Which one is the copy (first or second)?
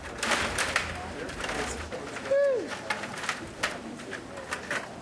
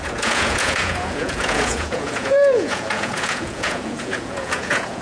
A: second